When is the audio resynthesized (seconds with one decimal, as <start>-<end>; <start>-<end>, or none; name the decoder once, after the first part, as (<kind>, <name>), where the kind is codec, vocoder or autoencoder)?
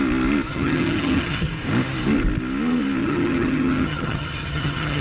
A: 0.5-1.5 (vocoder, HiFi-GAN); 3.0-5.0